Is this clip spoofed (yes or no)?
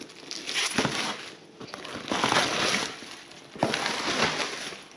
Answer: no